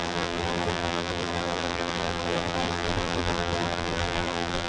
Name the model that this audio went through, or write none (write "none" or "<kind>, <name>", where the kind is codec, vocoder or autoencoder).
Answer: vocoder, BigVGAN v2